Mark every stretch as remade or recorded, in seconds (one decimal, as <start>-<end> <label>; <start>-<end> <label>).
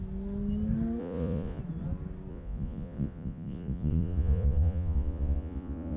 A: 0.0-1.0 recorded; 1.0-1.6 remade; 1.6-2.3 recorded; 2.3-6.0 remade